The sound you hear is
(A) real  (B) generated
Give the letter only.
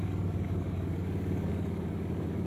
B